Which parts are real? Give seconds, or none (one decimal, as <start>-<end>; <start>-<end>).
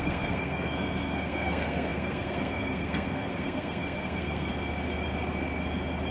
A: 4.5-6.1